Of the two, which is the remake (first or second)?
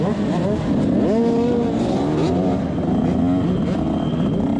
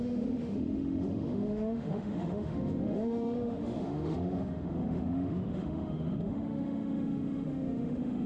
second